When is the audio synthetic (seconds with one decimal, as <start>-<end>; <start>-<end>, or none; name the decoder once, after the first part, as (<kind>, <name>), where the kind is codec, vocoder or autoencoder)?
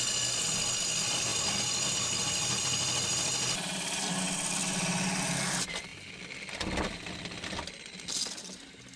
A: none